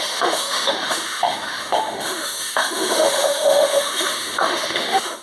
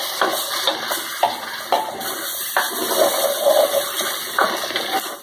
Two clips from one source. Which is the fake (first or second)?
first